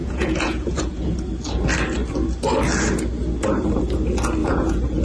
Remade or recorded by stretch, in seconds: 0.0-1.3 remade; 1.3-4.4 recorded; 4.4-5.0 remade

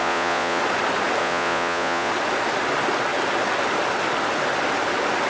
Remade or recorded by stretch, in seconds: 0.0-0.6 remade; 0.6-1.2 recorded; 1.2-2.1 remade; 2.1-5.3 recorded